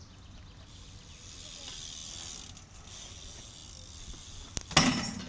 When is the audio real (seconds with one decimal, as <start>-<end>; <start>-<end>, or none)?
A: 0.0-5.3